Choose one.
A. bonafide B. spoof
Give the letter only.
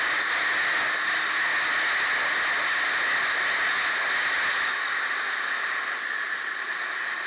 A